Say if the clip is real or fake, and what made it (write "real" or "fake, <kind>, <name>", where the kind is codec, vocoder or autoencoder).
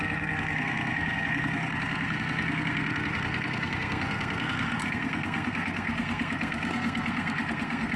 fake, codec, SNAC